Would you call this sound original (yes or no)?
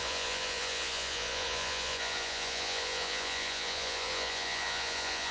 no